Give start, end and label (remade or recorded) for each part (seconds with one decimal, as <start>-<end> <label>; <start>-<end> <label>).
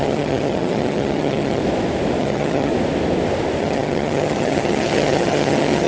0.0-1.6 remade; 1.6-2.2 recorded; 2.2-2.7 remade; 2.7-3.6 recorded; 3.6-5.9 remade